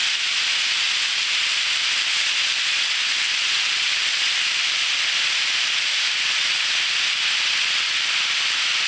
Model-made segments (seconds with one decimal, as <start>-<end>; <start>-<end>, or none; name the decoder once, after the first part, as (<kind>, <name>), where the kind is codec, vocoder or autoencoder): none